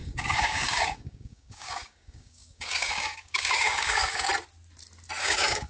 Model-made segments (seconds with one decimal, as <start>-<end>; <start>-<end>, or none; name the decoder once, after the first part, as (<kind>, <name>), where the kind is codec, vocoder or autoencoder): 0.0-4.3 (codec, DAC); 5.2-5.7